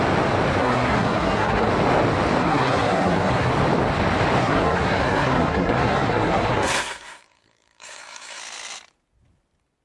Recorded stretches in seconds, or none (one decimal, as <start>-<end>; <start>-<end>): 0.0-0.6; 1.7-2.4; 3.5-4.4; 8.4-9.8